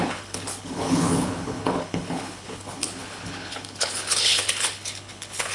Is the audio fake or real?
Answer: fake